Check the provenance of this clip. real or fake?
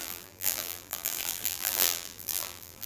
fake